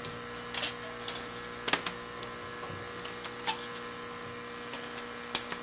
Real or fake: real